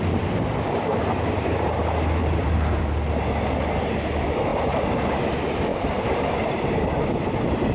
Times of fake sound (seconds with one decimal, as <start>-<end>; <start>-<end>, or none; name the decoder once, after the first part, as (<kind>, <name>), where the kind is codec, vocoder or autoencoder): 0.9-1.7 (vocoder, BigVGAN v2); 2.2-2.8; 4.5-5.1; 5.7-6.2